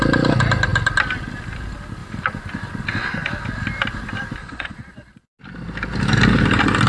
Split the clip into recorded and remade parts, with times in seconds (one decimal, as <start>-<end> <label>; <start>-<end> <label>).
0.0-4.4 recorded; 4.4-5.2 remade; 5.2-6.9 recorded